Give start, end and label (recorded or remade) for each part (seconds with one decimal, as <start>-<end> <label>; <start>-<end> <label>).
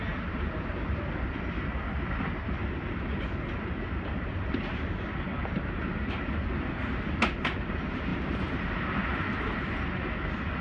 0.0-10.6 recorded